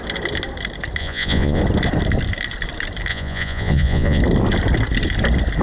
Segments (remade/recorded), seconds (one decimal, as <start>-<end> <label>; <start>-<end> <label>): 0.0-1.0 recorded; 1.0-1.6 remade; 1.6-3.1 recorded; 3.1-4.2 remade; 4.2-5.6 recorded